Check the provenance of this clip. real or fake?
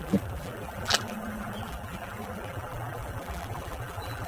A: fake